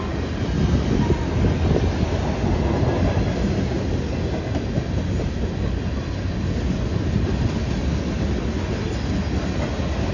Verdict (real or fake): real